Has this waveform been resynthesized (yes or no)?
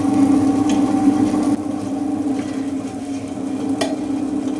no